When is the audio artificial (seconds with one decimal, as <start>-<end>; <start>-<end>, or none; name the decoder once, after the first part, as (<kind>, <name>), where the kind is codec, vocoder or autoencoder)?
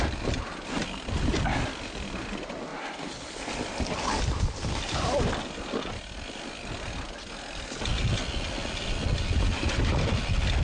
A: none